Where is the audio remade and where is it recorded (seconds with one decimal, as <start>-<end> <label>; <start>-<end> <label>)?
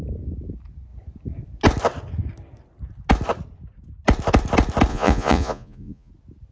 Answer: 0.0-4.9 recorded; 4.9-6.1 remade; 6.1-6.5 recorded